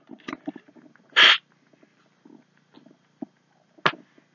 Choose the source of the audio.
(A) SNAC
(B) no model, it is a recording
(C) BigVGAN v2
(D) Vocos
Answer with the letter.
B